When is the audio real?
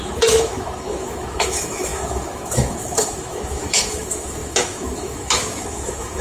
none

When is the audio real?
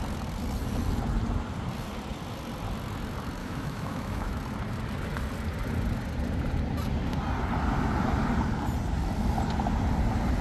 0.0-3.4; 4.4-10.4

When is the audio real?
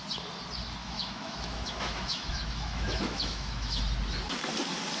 0.0-0.8; 3.8-5.0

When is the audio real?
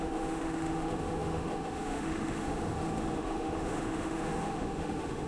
none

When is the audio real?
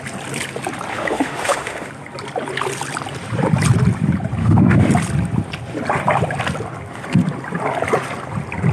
0.0-0.9; 1.9-4.4; 4.9-8.7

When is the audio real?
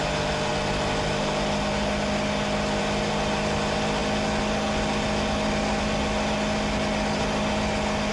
0.0-8.1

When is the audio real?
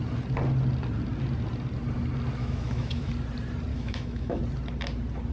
0.0-2.4; 3.1-3.7; 4.4-5.3